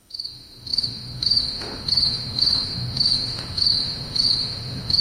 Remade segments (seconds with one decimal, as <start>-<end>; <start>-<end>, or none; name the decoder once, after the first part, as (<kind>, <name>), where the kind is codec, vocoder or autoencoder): 0.0-5.0 (autoencoder, DAC-VAE)